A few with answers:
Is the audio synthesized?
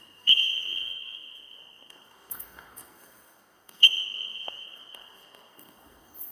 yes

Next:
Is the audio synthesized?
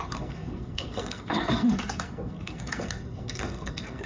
yes